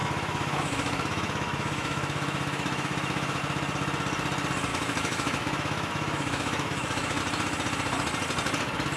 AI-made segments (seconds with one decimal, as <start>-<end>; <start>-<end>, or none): 0.0-3.4; 4.7-7.2